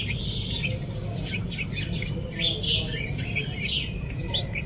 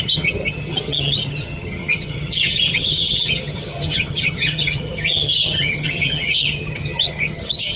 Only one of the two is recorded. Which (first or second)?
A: first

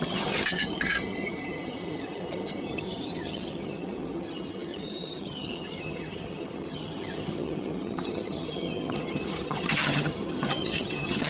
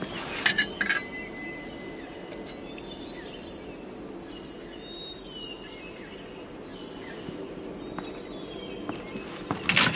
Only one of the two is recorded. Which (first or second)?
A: second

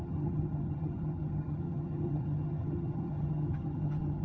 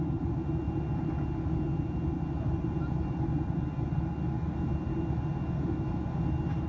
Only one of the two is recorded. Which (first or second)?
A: second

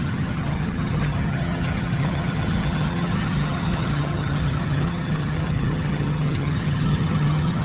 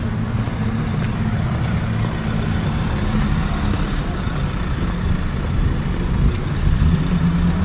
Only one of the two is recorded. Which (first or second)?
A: second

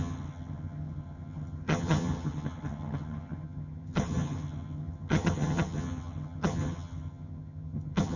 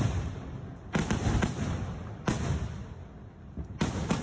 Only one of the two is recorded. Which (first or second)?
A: second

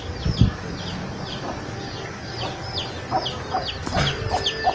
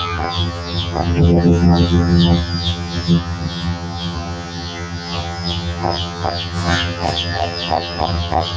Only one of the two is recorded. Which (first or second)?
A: first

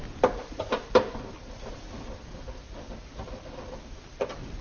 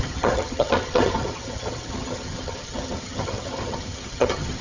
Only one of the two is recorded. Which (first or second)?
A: first